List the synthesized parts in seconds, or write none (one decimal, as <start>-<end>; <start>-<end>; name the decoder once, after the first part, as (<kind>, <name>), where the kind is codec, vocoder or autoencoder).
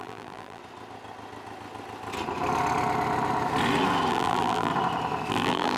0.0-0.6 (vocoder, BigVGAN v2); 4.1-4.7; 5.3-5.8